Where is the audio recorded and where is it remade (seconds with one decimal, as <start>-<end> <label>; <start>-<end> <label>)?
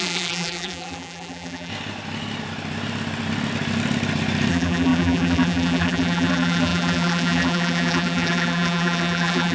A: 0.0-1.7 remade; 1.7-4.5 recorded; 4.5-9.5 remade